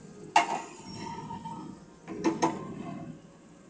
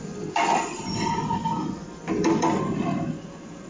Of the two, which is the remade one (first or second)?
second